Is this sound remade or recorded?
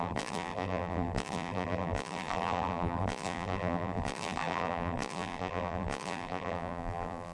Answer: remade